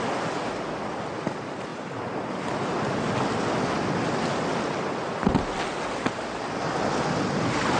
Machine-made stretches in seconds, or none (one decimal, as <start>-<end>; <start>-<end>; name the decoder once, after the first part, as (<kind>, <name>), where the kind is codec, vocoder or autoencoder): none

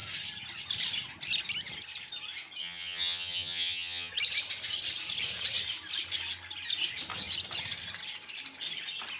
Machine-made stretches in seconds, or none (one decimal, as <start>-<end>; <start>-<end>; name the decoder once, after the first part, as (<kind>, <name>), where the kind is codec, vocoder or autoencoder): 2.6-4.1 (vocoder, HiFi-GAN)

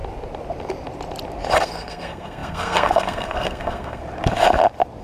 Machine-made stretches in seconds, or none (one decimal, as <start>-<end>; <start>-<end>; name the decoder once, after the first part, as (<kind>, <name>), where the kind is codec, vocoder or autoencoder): 1.6-4.0 (codec, SNAC)

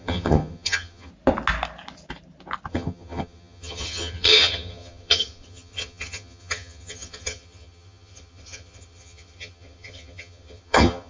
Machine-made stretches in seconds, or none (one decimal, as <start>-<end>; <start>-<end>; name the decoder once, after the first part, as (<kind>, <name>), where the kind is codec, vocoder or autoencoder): 0.0-1.1 (vocoder, HiFi-GAN); 2.7-11.1

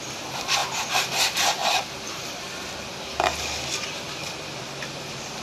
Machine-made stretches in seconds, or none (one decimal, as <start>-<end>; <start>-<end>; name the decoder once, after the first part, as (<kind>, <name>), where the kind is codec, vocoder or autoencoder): 0.0-0.6 (vocoder, BigVGAN v2); 1.2-5.4

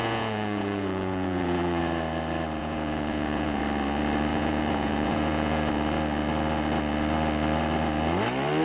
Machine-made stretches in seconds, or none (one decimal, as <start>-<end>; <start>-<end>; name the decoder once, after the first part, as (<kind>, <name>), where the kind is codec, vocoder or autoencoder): 0.0-1.8 (vocoder, Vocos); 2.6-3.6; 4.3-5.7